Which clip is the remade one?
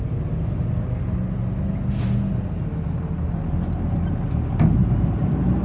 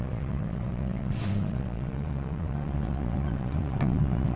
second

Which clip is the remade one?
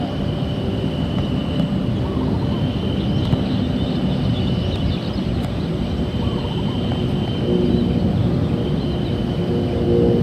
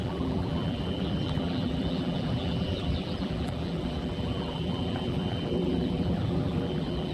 second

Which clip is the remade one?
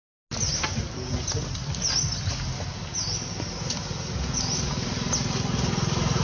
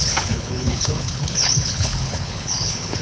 second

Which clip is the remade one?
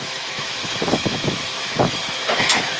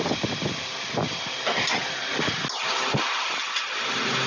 first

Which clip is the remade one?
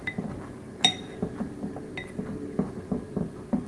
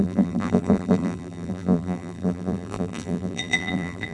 second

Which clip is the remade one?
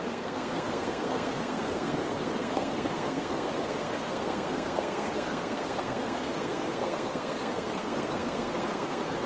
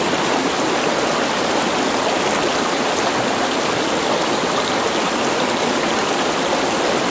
first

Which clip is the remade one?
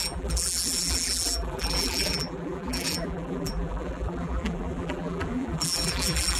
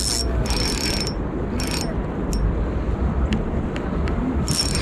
first